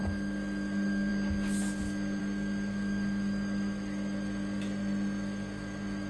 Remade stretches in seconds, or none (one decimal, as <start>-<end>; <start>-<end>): 0.0-1.1; 2.2-6.1